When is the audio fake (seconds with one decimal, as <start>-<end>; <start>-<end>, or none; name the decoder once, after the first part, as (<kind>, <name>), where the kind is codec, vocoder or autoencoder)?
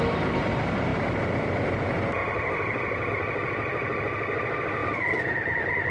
2.2-3.1 (vocoder, BigVGAN v2); 4.8-5.9